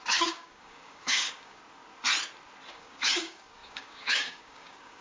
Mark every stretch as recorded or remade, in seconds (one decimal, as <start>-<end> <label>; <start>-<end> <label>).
0.0-1.6 remade; 1.6-2.7 recorded; 2.7-5.0 remade